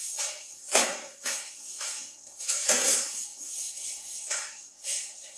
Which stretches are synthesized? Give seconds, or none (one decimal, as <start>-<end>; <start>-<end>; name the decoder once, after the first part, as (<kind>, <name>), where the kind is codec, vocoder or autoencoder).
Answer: 0.0-5.4 (codec, SNAC)